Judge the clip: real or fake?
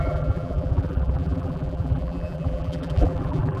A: fake